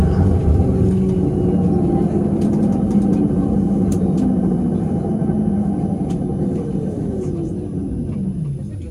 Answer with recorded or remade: recorded